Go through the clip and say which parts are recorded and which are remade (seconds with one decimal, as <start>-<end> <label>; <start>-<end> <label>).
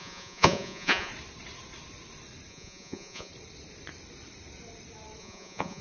0.0-1.1 remade; 1.1-2.5 recorded; 2.5-3.3 remade; 3.3-5.2 recorded; 5.2-5.8 remade